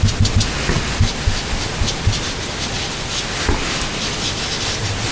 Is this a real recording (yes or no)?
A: yes